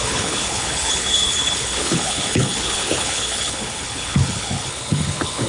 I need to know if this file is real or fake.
fake